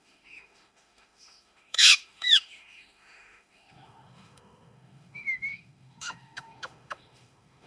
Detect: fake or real fake